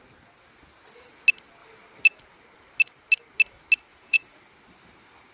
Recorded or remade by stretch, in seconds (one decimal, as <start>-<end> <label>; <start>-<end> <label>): 0.0-3.9 recorded; 3.9-4.4 remade; 4.4-5.3 recorded